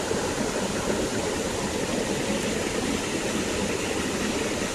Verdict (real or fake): real